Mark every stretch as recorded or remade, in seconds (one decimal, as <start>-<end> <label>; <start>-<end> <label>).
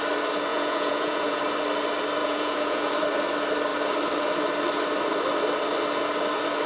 0.0-0.5 recorded; 0.5-1.4 remade; 1.4-2.2 recorded; 2.2-2.9 remade; 2.9-6.7 recorded